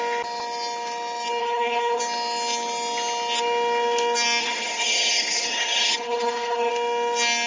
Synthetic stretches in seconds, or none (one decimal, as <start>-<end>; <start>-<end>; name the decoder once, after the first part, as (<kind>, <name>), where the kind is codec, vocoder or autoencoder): 1.4-2.0 (codec, HILCodec); 4.4-6.7